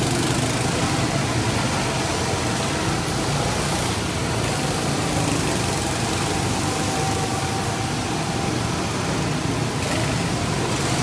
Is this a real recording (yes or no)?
yes